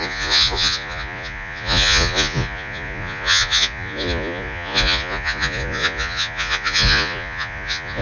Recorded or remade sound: remade